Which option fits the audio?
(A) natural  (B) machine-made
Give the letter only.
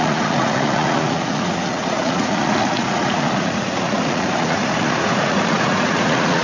B